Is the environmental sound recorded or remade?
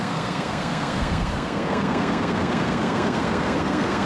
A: remade